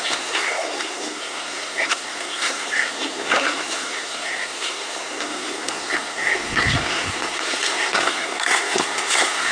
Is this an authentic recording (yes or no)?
no